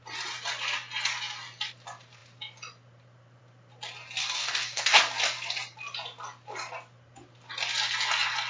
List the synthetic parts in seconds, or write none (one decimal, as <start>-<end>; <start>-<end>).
4.2-5.0